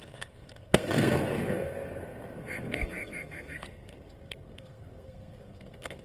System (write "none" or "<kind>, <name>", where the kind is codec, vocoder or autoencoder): codec, SNAC